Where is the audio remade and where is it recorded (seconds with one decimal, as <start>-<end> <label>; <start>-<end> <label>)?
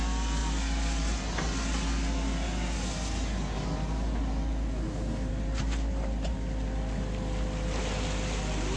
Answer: 0.0-8.8 recorded